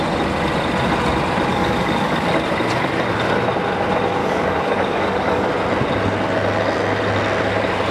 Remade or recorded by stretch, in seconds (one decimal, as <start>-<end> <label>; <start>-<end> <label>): 0.0-1.5 recorded; 1.5-2.3 remade; 2.3-4.2 recorded; 4.2-5.5 remade; 5.5-7.9 recorded